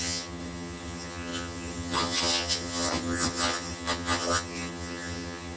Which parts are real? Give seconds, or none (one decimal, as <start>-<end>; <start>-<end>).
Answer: none

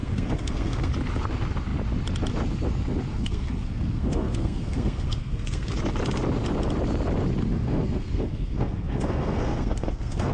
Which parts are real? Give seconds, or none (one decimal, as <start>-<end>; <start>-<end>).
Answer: 0.9-3.1; 5.7-7.5

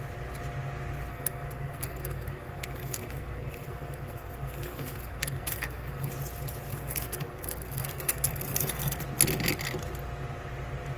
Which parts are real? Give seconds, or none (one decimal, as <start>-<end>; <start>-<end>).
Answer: 0.0-1.1; 6.1-6.7; 9.0-11.0

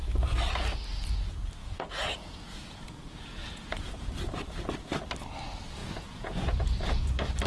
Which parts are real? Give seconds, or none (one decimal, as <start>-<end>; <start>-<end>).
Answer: 0.0-1.6; 4.1-5.8; 7.1-7.5